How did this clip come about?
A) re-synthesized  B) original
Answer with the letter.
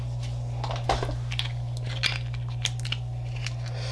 B